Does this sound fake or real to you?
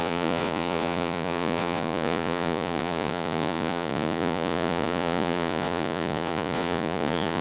fake